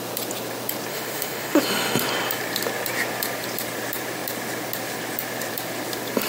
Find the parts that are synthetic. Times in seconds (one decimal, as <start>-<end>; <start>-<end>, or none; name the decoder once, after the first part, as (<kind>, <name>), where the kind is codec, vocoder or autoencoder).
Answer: 0.9-1.6 (autoencoder, DAC-VAE)